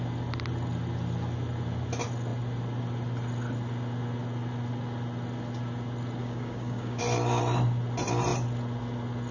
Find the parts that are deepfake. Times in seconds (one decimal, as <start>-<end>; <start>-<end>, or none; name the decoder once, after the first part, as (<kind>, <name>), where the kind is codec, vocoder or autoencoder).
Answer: 6.2-7.0 (codec, DAC)